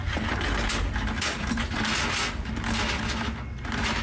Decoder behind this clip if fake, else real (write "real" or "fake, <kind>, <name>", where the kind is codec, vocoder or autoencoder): real